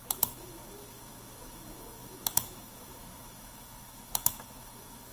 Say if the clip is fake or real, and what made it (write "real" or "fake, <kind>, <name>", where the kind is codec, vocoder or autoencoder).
fake, autoencoder, DAC-VAE